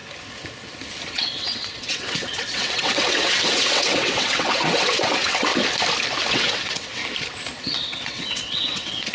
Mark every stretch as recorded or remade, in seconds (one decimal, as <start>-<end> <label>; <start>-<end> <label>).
0.0-1.1 recorded; 1.1-5.5 remade; 5.5-6.3 recorded; 6.3-7.0 remade; 7.0-7.6 recorded; 7.6-9.1 remade